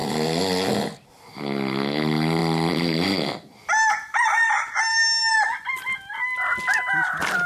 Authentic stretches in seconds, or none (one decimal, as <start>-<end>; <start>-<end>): 0.0-7.5